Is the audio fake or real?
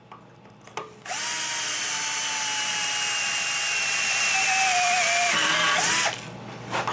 real